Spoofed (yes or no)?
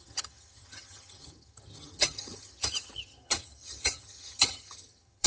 yes